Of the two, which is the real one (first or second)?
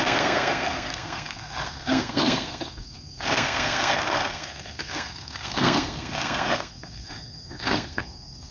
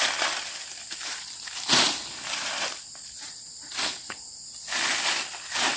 second